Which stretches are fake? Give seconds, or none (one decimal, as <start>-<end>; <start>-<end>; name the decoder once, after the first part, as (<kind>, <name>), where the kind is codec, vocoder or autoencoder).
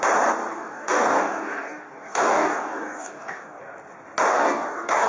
0.5-3.6 (codec, DAC); 4.3-5.1